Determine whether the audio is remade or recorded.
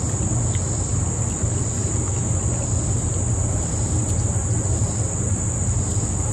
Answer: recorded